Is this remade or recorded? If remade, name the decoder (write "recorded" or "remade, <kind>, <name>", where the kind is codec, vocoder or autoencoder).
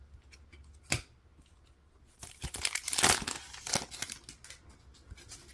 recorded